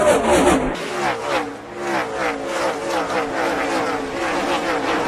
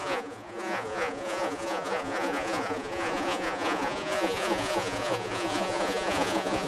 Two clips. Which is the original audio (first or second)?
first